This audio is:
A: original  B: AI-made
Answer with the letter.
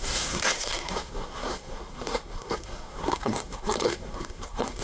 B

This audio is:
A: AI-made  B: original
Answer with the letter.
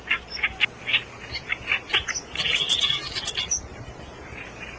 B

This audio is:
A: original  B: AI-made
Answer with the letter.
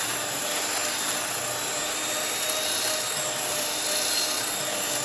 A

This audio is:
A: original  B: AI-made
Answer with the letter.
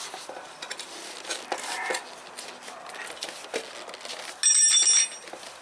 A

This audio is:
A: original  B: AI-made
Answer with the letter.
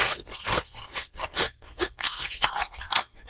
B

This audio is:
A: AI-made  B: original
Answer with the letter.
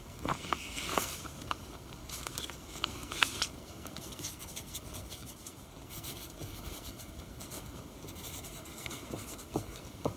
A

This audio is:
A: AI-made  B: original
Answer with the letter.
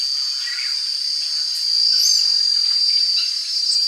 B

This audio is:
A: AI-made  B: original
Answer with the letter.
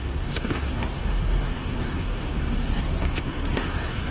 A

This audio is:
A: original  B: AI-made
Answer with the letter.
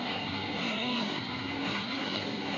B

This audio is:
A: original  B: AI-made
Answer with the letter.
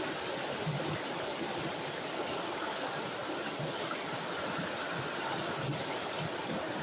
A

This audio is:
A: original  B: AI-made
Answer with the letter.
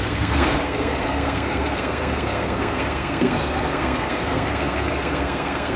B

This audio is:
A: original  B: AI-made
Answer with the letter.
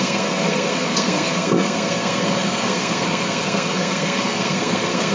B